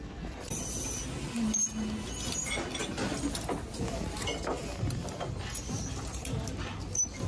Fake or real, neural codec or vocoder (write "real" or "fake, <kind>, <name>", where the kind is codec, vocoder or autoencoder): real